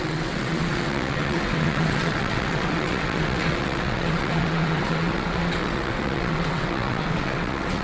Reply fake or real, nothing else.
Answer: fake